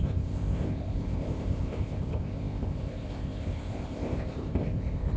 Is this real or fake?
fake